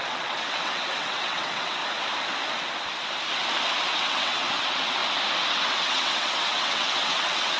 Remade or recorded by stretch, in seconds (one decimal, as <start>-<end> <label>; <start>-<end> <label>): 0.0-1.8 remade; 1.8-3.8 recorded; 3.8-5.0 remade; 5.0-5.5 recorded; 5.5-7.6 remade